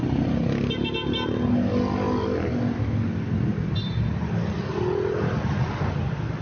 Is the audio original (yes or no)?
yes